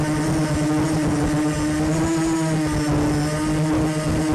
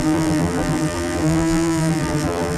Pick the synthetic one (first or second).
second